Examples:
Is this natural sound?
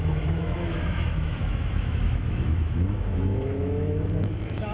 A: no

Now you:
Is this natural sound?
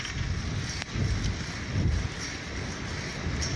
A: yes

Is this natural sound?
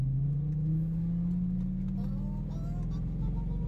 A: yes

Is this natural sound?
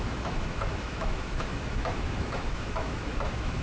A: no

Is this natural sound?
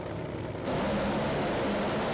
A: yes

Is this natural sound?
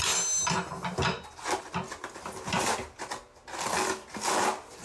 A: yes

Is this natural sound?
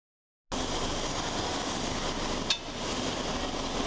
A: yes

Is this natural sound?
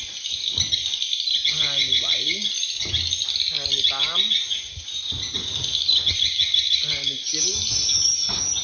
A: yes